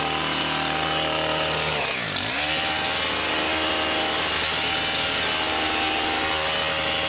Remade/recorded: recorded